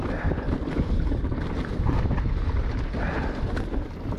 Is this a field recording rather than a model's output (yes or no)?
yes